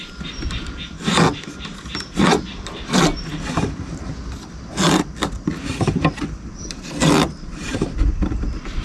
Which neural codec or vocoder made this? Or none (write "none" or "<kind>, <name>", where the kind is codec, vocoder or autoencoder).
none